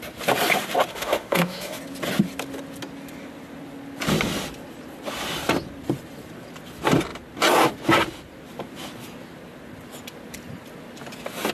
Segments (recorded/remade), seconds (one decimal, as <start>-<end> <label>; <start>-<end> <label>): 0.0-0.9 recorded; 0.9-1.8 remade; 1.8-11.5 recorded